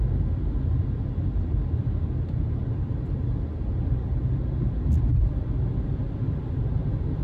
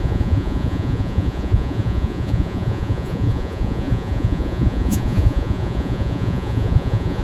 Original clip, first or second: first